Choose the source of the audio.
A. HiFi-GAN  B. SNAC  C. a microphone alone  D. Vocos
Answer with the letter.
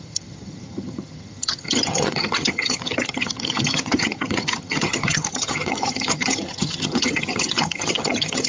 A